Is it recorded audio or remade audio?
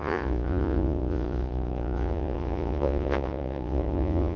remade